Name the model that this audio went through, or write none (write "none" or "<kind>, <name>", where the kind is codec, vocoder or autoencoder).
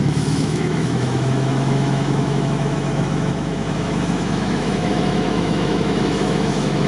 autoencoder, DAC-VAE